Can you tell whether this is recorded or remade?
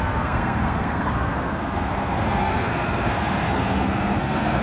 remade